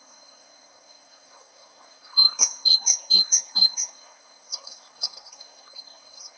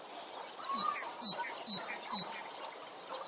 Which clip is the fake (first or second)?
first